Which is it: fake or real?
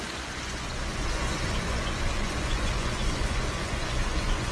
fake